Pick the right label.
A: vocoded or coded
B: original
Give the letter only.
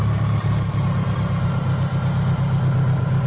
B